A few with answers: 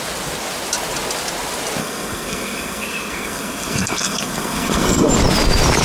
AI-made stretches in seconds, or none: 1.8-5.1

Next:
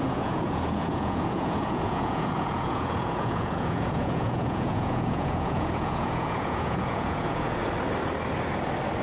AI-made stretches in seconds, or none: 0.0-7.6

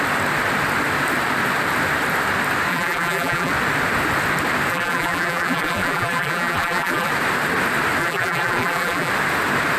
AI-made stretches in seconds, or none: 2.7-3.5; 4.7-7.1; 8.0-9.1

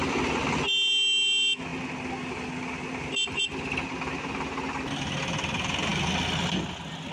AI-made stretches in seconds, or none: none